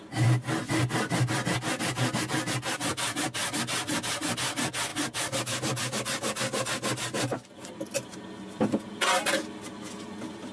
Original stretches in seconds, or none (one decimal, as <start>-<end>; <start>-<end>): 0.0-10.5